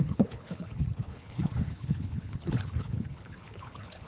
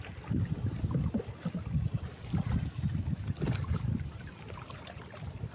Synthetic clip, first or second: first